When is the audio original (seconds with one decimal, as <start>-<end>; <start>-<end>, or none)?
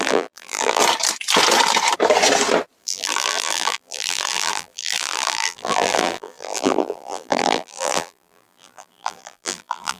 0.8-2.8